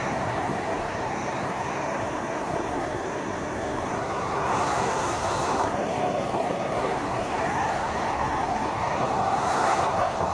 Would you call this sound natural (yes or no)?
no